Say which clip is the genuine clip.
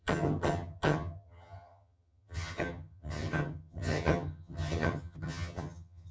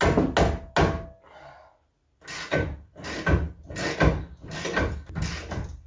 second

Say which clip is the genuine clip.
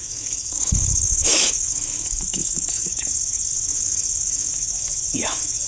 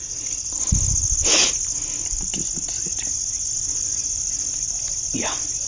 second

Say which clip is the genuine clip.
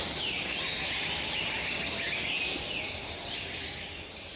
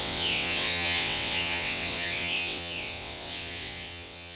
first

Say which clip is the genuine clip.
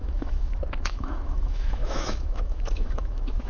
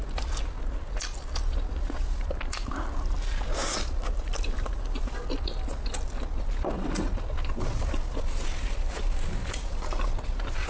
second